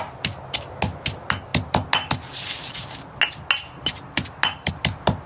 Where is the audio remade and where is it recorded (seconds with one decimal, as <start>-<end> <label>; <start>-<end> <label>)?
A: 0.0-5.3 recorded

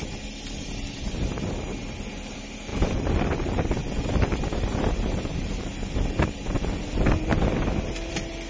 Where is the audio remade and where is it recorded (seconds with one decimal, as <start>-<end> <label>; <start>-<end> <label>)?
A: 0.0-8.5 recorded

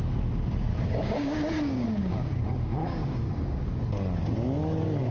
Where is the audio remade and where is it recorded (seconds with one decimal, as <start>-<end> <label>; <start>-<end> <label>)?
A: 0.0-0.7 recorded; 0.7-2.4 remade; 2.4-2.8 recorded; 2.8-3.8 remade; 3.8-5.1 recorded

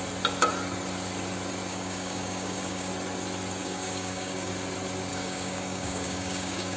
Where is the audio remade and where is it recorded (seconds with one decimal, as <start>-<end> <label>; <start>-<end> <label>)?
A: 0.0-1.7 recorded; 1.7-2.9 remade; 2.9-3.6 recorded; 3.6-4.5 remade; 4.5-5.1 recorded; 5.1-6.8 remade

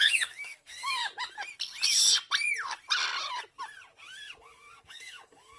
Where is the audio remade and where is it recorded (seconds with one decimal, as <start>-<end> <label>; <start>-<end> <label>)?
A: 0.0-1.0 remade; 1.0-4.4 recorded; 4.4-5.6 remade

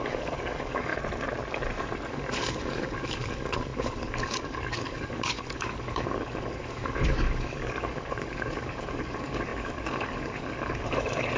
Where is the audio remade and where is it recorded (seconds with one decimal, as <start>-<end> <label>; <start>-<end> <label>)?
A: 0.0-0.9 remade; 0.9-2.1 recorded; 2.1-11.4 remade

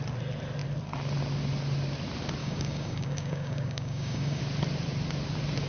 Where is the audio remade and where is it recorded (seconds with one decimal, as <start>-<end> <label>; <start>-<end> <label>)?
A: 0.0-2.4 recorded; 2.4-4.4 remade; 4.4-5.7 recorded

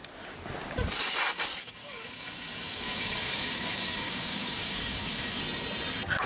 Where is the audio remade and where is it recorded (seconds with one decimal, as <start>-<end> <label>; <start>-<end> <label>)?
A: 0.0-1.6 recorded; 1.6-5.4 remade; 5.4-6.3 recorded